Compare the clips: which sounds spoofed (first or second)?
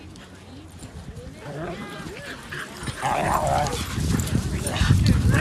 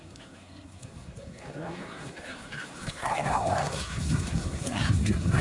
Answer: second